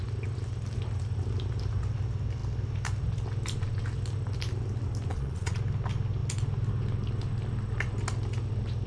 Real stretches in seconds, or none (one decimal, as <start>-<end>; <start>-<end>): 0.0-5.1; 5.6-8.9